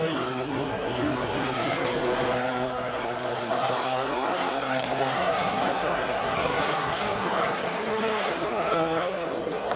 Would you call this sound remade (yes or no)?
yes